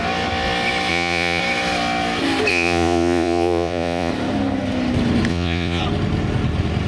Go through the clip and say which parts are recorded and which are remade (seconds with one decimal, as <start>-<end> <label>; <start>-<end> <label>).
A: 0.0-0.9 recorded; 0.9-1.4 remade; 1.4-2.5 recorded; 2.5-4.1 remade; 4.1-5.3 recorded; 5.3-5.8 remade; 5.8-6.9 recorded